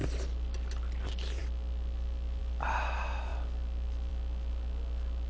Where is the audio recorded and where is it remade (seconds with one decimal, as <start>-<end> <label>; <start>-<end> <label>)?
0.0-5.3 recorded